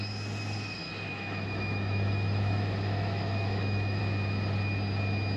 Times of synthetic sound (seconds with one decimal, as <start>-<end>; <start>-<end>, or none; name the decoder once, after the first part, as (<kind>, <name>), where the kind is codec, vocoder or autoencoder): 0.8-4.0 (autoencoder, DAC-VAE)